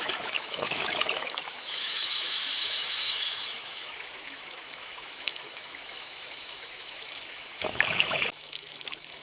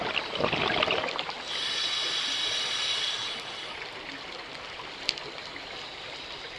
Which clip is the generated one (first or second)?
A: first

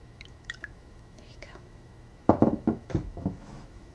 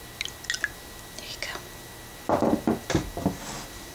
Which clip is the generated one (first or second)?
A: first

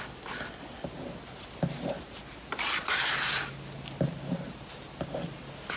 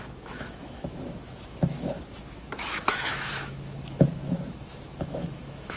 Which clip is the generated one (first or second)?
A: second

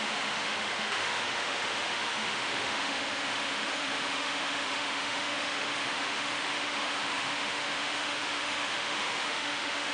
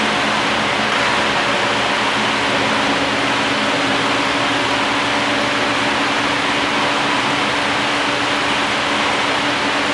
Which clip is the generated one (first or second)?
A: first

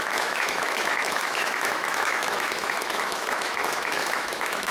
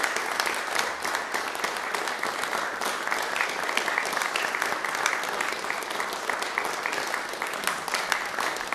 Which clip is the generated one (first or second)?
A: first